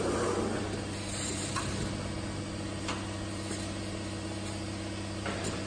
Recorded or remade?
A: recorded